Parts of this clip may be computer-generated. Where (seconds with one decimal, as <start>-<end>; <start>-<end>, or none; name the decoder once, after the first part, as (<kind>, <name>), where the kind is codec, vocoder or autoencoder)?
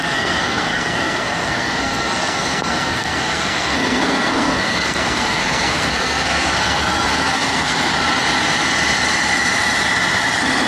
0.0-7.9 (codec, SNAC)